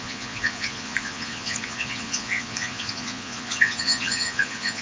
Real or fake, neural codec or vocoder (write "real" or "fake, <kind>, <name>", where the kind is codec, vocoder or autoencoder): fake, vocoder, Vocos